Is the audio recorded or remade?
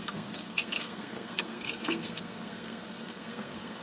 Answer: remade